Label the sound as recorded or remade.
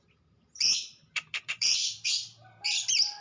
remade